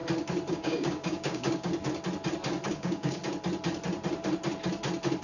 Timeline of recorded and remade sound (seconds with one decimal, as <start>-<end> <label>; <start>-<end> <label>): 0.0-0.5 recorded; 0.5-1.7 remade; 1.7-2.7 recorded; 2.7-3.2 remade; 3.2-5.2 recorded